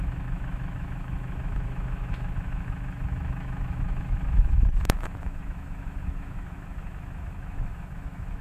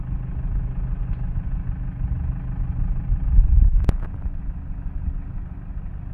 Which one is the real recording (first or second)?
second